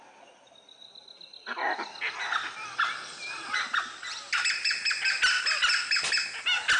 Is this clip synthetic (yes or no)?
no